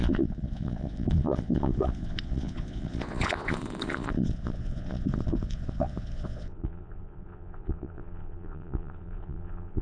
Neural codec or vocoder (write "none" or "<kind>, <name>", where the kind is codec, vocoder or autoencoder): vocoder, Vocos